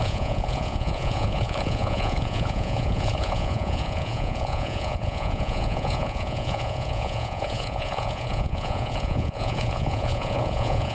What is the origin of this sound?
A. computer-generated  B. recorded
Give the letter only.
A